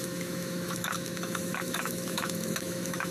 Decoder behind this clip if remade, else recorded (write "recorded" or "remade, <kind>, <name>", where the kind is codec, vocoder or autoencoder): remade, autoencoder, DAC-VAE